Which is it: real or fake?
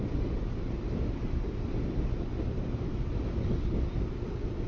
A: real